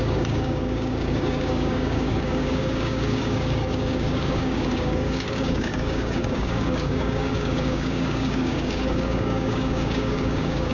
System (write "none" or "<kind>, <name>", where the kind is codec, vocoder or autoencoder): codec, DAC